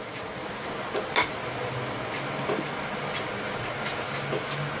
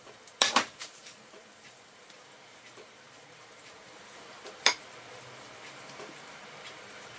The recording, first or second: first